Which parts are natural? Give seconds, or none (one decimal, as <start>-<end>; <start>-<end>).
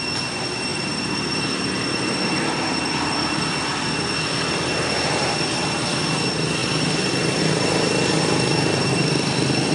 0.0-9.7